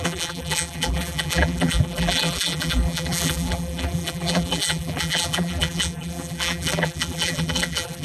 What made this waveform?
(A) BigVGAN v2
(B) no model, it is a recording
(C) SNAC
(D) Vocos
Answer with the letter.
A